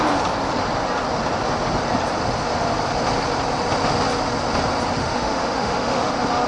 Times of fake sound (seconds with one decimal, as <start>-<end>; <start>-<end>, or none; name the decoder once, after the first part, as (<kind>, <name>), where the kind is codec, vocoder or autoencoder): 5.0-6.1 (autoencoder, DAC-VAE)